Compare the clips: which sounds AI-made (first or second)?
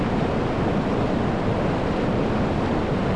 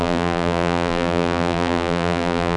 second